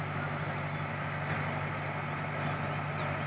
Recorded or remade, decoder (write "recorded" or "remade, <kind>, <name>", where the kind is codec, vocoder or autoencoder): recorded